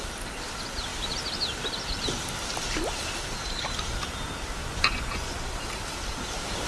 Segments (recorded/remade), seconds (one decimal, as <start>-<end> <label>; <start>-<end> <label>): 0.0-4.6 recorded; 4.6-5.5 remade; 5.5-6.7 recorded